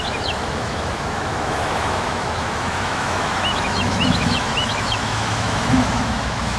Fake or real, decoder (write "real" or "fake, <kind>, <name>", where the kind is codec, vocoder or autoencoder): fake, autoencoder, DAC-VAE